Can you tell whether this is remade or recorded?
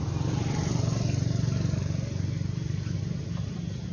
recorded